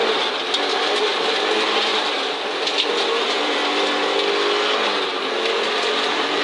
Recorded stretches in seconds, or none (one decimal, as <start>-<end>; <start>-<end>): 0.0-0.7; 1.9-2.9; 3.6-6.0